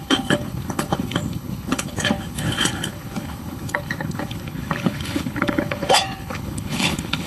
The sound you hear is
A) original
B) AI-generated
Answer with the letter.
B